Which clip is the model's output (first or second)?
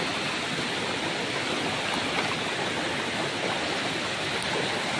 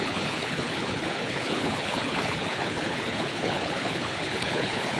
second